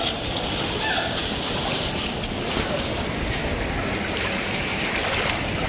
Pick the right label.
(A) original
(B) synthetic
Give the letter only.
A